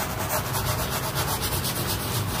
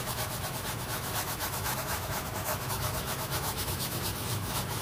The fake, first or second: second